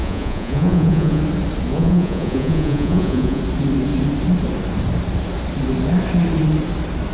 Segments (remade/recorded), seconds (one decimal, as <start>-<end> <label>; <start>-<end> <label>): 0.0-1.2 remade; 1.2-1.7 recorded; 1.7-3.4 remade; 3.4-7.1 recorded